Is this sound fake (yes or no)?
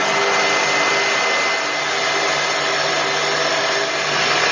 no